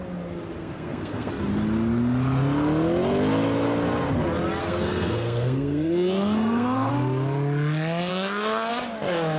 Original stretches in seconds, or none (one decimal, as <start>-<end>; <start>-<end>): 0.0-0.6; 1.3-4.6; 6.9-8.1; 8.7-9.4